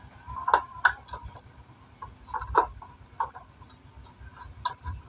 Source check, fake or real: real